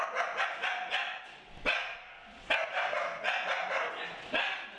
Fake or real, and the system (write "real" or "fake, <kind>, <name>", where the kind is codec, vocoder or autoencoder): real